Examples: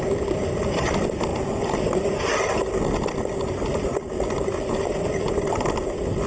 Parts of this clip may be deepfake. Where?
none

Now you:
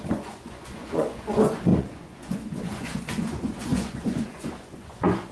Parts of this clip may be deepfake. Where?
0.0-5.3 (vocoder, Vocos)

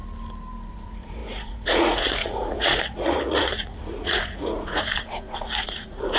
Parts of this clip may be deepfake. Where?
0.7-6.2 (vocoder, Vocos)

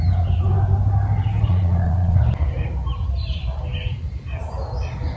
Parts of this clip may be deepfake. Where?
1.5-2.2 (vocoder, Vocos)

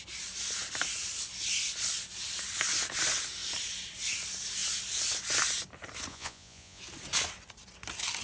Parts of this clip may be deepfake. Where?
6.1-6.8 (vocoder, Vocos)

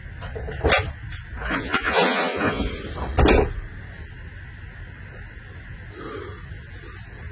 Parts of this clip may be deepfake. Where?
1.4-2.7 (vocoder, Vocos)

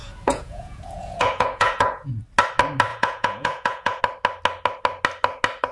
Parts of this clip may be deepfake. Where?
0.0-2.1 (vocoder, Vocos); 2.9-4.0

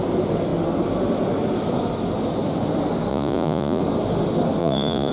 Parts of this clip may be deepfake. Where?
3.1-3.8 (vocoder, Vocos); 4.6-5.1